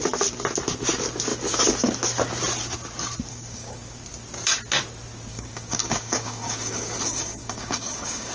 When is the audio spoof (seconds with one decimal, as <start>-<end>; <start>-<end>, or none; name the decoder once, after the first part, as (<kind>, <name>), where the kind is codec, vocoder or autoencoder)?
3.3-3.8 (codec, DAC); 5.3-8.3